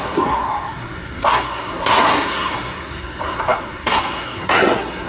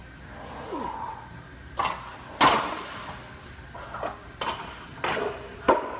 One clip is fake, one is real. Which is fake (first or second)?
first